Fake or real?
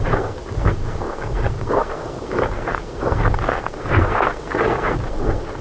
fake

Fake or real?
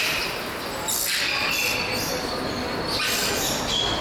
real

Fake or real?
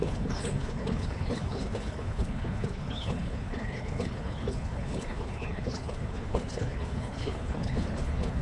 fake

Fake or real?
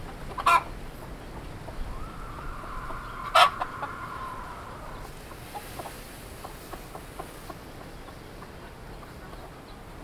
real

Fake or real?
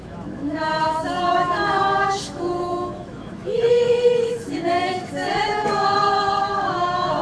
fake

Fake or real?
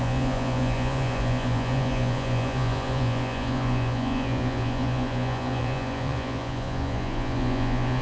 fake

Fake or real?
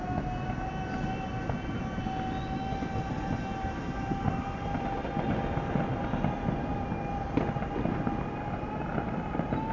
real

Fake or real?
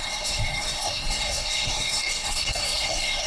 fake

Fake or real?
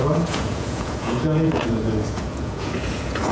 fake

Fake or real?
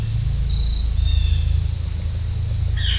real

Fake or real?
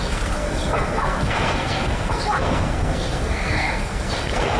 fake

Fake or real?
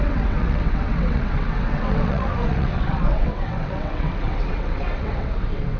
fake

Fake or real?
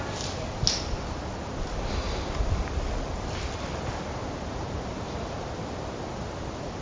real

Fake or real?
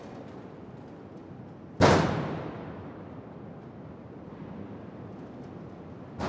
real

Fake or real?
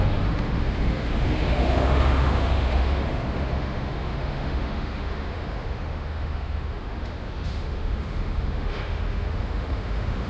fake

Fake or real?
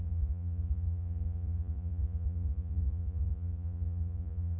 fake